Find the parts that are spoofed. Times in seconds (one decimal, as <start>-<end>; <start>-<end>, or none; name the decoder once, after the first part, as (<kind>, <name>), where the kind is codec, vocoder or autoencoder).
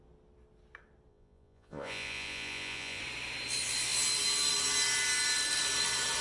1.1-3.0 (vocoder, Vocos)